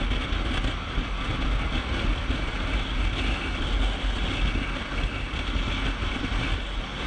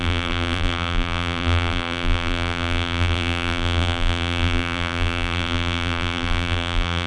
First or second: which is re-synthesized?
second